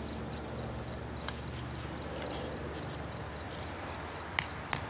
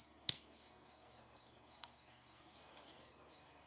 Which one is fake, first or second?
second